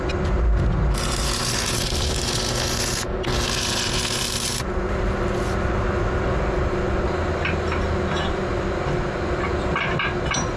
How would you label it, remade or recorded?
recorded